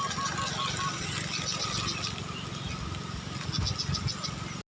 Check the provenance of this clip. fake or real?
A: real